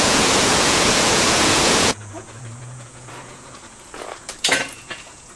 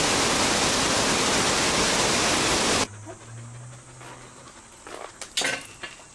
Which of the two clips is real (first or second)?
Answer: second